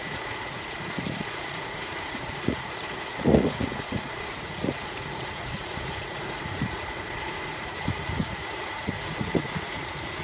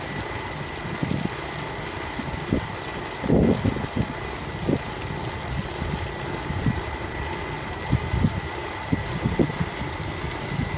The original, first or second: second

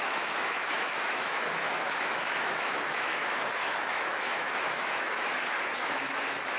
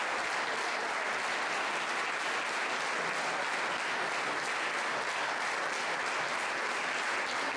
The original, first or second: second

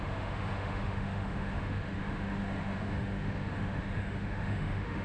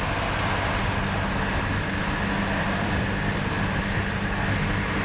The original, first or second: second